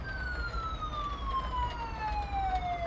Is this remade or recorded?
recorded